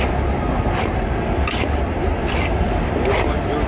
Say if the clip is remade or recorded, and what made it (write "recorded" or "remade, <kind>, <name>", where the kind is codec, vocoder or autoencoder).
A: recorded